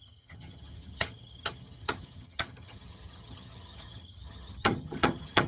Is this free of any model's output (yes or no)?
no